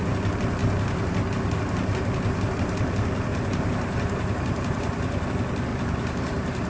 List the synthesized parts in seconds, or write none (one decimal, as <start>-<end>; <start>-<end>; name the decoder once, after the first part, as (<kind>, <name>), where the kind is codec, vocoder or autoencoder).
3.3-5.3 (vocoder, BigVGAN v2); 5.7-6.7